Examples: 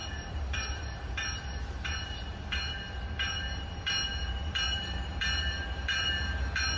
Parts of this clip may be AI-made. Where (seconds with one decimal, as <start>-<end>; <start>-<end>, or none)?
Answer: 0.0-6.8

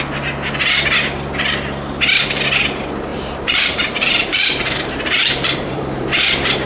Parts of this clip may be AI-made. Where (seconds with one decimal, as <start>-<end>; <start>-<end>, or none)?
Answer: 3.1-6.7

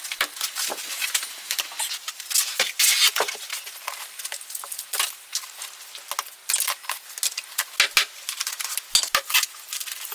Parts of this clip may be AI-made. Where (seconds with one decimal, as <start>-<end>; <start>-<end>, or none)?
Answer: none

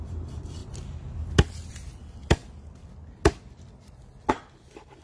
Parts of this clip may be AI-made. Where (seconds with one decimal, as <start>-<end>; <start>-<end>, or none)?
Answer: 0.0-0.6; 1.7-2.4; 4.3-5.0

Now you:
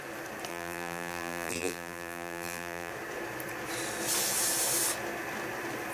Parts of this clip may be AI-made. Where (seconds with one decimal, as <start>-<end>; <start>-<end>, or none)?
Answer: 0.5-2.9

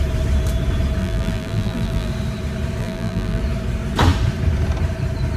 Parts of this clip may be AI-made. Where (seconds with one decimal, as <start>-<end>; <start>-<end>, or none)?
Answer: 1.0-2.1; 2.8-3.4

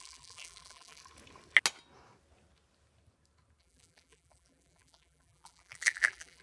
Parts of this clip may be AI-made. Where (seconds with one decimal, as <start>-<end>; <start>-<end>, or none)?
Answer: 0.0-1.0; 3.6-6.4